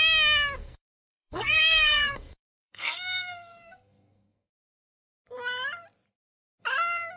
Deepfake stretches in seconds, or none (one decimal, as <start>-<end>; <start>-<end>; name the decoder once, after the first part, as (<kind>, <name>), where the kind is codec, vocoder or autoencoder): 0.6-4.7 (codec, SNAC)